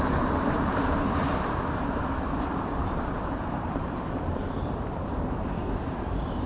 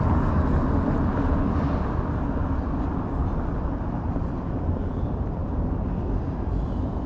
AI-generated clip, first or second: first